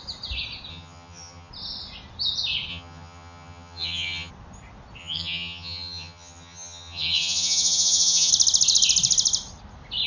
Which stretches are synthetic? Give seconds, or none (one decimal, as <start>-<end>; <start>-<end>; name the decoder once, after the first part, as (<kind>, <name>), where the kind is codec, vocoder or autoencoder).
0.7-1.5 (vocoder, HiFi-GAN); 2.7-4.3; 5.0-8.3